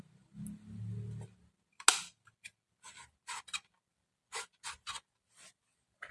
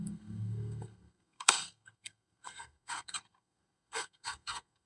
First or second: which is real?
first